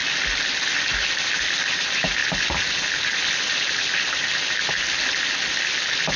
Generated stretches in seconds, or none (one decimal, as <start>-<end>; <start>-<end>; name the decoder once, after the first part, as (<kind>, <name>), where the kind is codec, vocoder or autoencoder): none